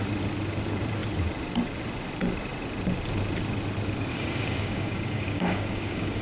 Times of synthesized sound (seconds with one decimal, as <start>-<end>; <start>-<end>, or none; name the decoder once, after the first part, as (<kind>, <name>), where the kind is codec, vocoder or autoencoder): 4.1-6.2 (codec, DAC)